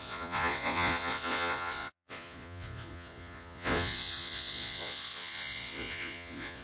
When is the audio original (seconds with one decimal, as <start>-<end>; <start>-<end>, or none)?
none